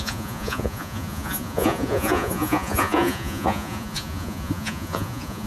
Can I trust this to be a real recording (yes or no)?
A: no